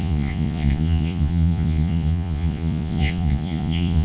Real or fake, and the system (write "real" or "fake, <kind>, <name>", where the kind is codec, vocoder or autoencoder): fake, vocoder, Vocos